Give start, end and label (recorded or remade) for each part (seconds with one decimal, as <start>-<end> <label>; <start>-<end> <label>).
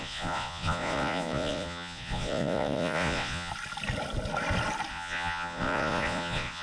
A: 0.0-3.5 remade; 3.5-4.9 recorded; 4.9-6.6 remade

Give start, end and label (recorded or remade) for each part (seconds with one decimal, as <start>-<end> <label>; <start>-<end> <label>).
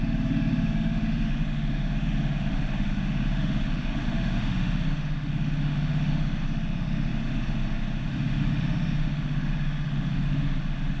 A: 0.0-11.0 remade